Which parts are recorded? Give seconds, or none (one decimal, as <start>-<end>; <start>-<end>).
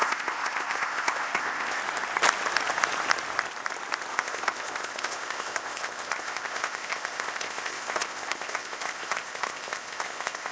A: 1.8-4.1